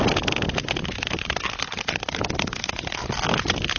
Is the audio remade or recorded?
recorded